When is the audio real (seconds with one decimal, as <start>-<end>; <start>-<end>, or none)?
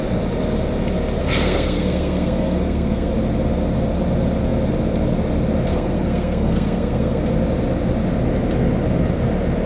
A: 0.0-1.2; 3.1-5.7; 7.2-9.7